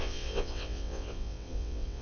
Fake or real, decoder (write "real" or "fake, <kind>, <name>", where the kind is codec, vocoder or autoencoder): fake, vocoder, WaveNeXt